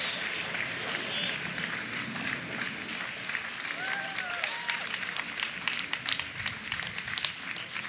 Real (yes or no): yes